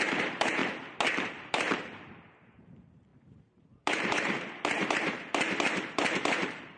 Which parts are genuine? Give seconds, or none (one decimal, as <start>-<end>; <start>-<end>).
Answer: 0.6-1.3